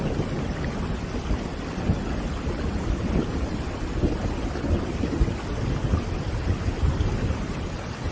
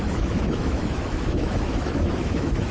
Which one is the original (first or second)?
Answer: first